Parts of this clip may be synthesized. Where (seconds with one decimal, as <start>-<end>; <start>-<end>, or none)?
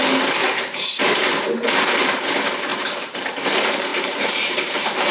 0.4-1.0; 2.7-3.3; 3.9-5.1